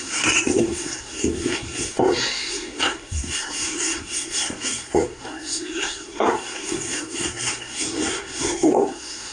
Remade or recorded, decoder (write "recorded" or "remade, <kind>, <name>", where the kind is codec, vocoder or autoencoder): remade, codec, SNAC